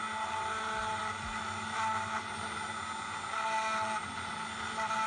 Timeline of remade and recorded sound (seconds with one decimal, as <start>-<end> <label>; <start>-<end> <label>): 0.0-5.1 recorded